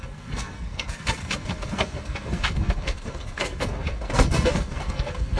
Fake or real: fake